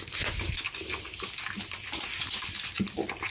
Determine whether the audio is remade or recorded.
recorded